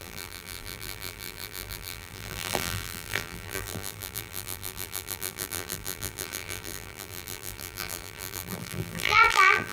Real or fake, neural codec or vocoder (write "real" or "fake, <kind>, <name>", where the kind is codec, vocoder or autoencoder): fake, vocoder, BigVGAN v2